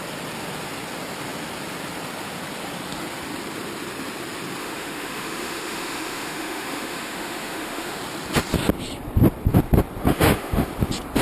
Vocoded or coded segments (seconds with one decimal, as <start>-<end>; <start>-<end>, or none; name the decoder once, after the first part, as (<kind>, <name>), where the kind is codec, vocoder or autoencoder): 4.6-8.0 (autoencoder, DAC-VAE); 10.0-10.7